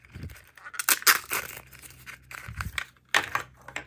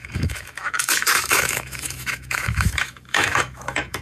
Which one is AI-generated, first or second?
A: second